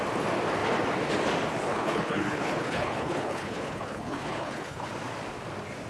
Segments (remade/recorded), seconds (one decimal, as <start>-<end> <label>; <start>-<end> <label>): 0.0-1.7 recorded; 1.7-4.9 remade; 4.9-5.9 recorded